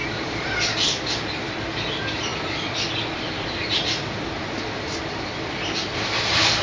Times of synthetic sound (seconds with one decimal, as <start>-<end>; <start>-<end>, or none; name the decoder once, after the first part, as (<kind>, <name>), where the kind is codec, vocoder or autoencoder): none